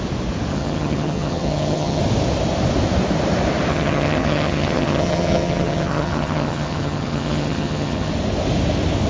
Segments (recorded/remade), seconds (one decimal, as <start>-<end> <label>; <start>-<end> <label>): 0.0-0.5 recorded; 0.5-2.0 remade; 2.0-3.7 recorded; 3.7-8.1 remade; 8.1-9.1 recorded